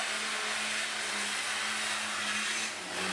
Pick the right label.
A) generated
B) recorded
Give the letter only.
B